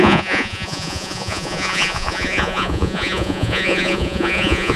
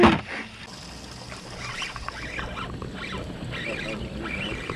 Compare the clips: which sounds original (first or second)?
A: second